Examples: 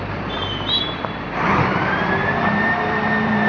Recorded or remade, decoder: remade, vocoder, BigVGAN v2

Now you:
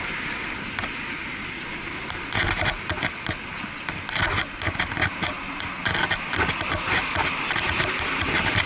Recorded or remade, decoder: recorded